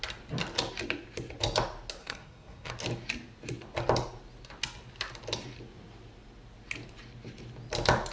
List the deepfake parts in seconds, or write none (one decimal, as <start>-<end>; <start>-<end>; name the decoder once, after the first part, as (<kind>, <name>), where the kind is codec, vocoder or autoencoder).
2.0-2.7 (codec, SNAC)